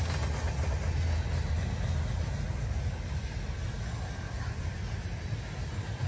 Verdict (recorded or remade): recorded